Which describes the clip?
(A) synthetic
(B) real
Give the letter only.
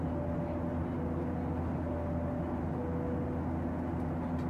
B